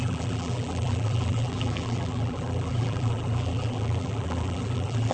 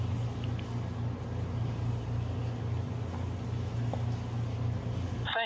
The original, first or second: second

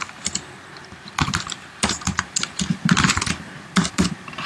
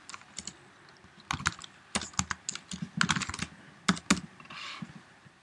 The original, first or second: second